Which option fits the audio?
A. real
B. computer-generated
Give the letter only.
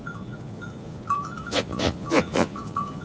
B